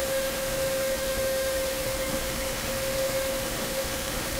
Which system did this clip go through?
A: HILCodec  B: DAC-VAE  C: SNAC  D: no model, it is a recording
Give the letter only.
B